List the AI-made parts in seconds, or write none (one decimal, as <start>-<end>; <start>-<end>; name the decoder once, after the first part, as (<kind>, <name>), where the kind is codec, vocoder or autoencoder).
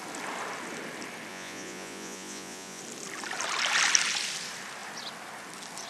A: 1.3-2.8 (vocoder, Vocos)